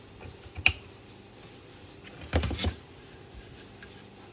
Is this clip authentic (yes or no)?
yes